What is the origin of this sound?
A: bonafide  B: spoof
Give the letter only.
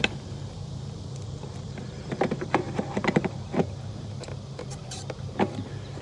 B